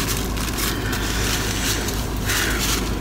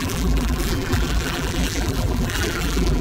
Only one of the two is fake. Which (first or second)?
second